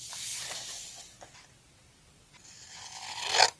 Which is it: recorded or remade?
recorded